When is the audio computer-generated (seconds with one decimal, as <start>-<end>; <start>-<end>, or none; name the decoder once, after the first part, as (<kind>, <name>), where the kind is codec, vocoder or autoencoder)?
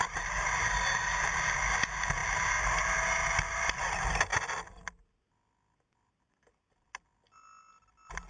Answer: none